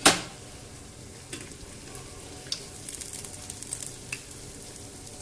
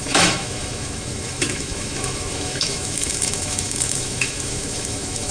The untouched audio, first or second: first